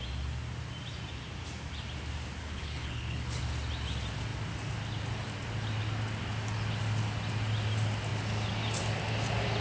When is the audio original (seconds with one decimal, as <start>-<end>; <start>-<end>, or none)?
0.0-2.4; 3.4-9.6